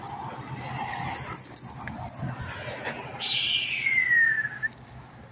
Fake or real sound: real